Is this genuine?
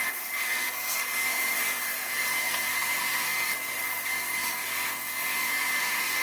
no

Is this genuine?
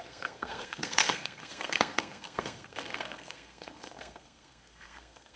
no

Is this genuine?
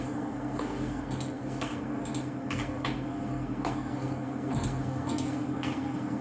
no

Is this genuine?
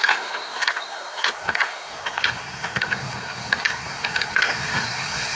no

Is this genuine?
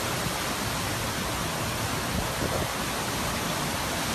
yes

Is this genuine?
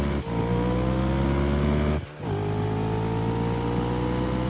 yes